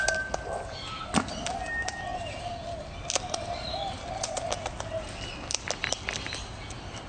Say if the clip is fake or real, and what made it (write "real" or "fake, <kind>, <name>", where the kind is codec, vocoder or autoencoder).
real